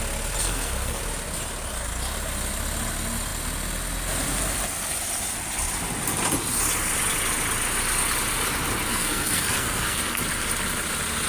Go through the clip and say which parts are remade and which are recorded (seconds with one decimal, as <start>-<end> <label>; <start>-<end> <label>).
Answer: 0.0-0.4 recorded; 0.4-1.0 remade; 1.0-8.9 recorded; 8.9-10.2 remade; 10.2-11.3 recorded